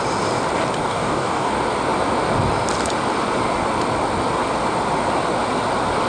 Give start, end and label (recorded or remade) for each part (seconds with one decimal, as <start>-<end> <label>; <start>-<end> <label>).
0.0-0.8 recorded; 0.8-1.5 remade; 1.5-6.1 recorded